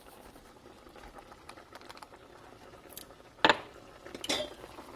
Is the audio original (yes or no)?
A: yes